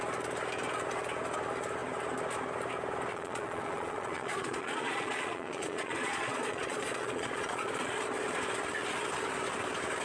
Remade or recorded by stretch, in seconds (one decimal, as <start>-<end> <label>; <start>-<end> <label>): 0.0-3.1 recorded; 3.1-7.9 remade; 7.9-10.0 recorded